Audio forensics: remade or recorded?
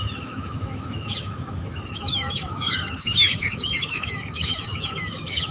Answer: remade